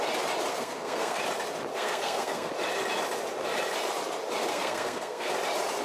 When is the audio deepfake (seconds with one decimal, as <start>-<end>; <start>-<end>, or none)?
0.5-1.2; 1.7-2.5; 4.5-5.3